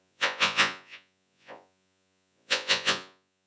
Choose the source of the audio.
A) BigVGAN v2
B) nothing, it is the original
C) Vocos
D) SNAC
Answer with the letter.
C